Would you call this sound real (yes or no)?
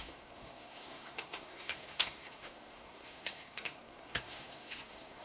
no